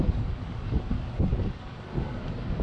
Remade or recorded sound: remade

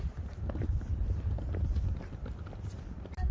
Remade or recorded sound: recorded